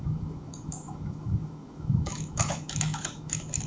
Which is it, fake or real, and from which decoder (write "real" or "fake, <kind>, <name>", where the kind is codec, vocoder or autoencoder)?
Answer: fake, autoencoder, DAC-VAE